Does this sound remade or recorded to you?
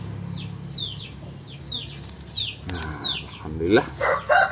recorded